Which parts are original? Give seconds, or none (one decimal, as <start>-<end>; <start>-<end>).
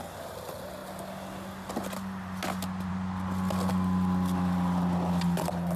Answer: 0.0-5.8